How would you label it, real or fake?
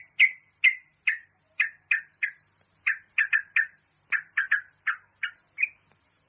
real